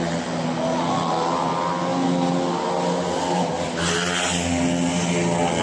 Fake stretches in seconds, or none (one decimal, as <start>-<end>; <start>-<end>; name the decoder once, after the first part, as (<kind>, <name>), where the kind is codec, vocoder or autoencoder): none